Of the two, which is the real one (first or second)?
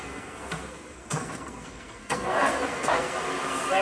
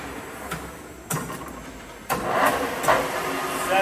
second